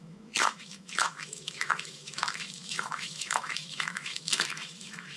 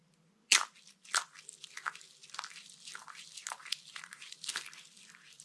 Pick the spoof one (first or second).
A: first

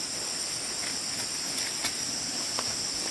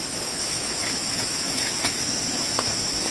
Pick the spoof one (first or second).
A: second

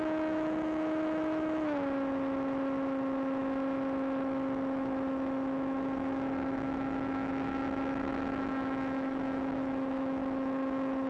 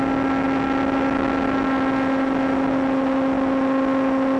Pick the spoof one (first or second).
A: first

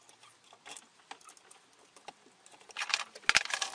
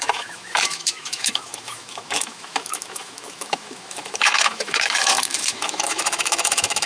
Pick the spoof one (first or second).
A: second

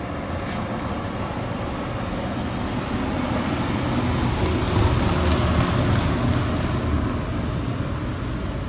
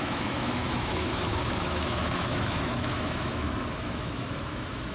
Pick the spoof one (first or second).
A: second